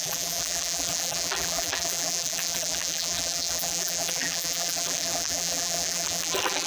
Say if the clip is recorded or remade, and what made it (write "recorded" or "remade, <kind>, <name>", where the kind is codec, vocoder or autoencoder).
remade, vocoder, BigVGAN v2